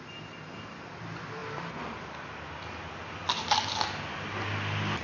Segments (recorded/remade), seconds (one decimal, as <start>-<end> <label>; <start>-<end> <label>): 0.0-5.0 recorded